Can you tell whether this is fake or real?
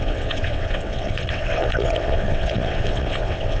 fake